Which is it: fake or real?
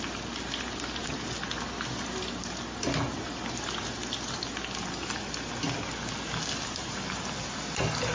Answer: real